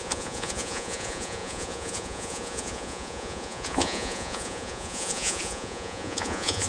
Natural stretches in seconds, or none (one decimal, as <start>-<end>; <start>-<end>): none